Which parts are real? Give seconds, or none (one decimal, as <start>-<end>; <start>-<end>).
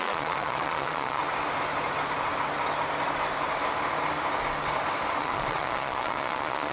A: 1.2-5.2